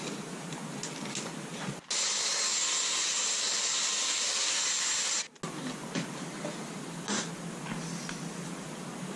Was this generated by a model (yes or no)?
no